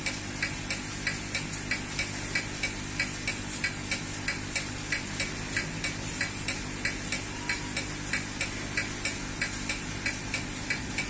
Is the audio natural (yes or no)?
yes